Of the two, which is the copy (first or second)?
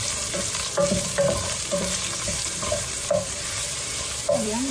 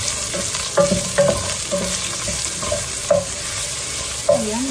first